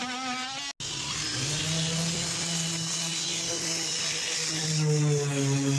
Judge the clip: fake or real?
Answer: real